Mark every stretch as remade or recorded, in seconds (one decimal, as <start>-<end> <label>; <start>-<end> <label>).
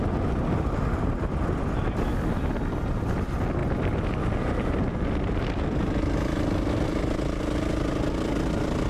0.0-8.9 recorded